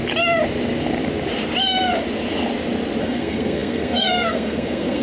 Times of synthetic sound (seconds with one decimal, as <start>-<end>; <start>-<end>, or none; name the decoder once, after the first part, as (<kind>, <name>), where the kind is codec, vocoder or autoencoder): 3.0-5.0 (codec, SNAC)